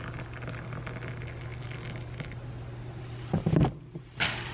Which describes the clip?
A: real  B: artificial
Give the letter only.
A